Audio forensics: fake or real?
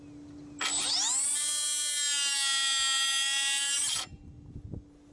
real